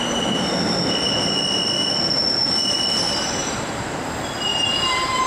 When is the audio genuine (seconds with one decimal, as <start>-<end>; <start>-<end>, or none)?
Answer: 0.0-3.4; 4.1-4.5